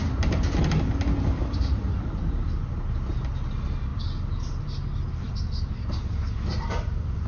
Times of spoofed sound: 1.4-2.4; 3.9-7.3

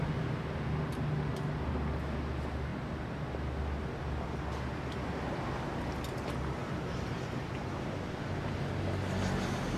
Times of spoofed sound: 6.6-7.9